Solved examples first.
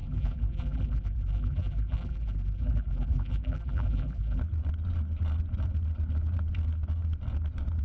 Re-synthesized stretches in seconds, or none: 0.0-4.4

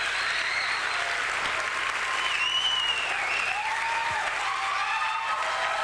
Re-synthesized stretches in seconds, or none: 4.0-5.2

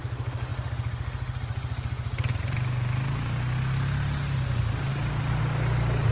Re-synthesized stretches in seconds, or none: none